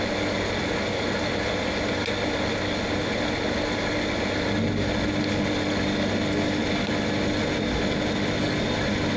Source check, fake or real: real